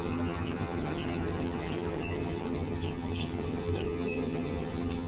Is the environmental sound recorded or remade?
remade